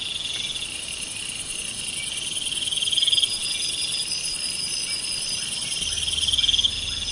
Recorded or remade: recorded